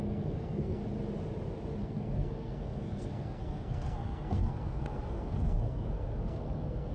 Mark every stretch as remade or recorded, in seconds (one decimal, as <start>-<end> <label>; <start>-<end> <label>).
0.0-0.8 remade; 0.8-1.8 recorded; 1.8-6.9 remade